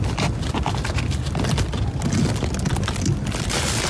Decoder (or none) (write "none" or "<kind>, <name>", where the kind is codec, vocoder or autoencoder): none